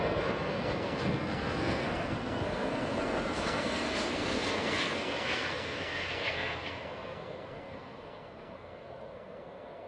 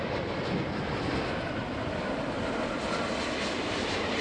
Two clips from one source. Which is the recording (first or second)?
second